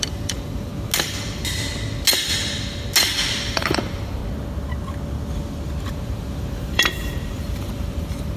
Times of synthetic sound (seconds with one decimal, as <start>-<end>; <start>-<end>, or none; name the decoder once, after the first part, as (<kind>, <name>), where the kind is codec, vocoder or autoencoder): 0.0-0.7 (vocoder, BigVGAN v2); 3.3-4.2; 5.8-8.4